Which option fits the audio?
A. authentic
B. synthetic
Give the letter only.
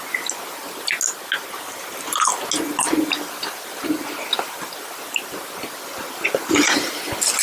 A